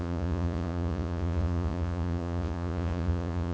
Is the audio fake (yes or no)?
yes